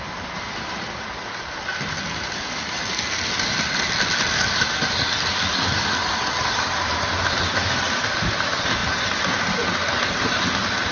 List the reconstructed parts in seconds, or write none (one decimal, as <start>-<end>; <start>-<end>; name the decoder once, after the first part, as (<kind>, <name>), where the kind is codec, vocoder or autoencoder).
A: 8.8-10.4 (vocoder, BigVGAN v2)